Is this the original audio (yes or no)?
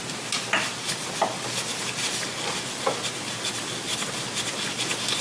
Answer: yes